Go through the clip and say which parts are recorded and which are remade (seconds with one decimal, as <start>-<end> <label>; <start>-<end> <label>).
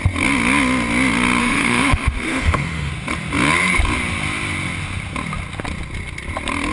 0.0-1.4 recorded; 1.4-2.9 remade; 2.9-6.7 recorded